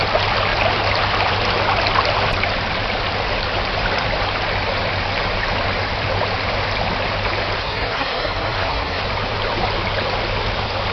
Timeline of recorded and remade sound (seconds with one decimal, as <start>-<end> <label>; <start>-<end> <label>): 0.0-7.6 recorded; 7.6-9.0 remade; 9.0-10.9 recorded